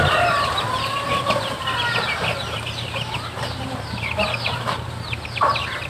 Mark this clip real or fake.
fake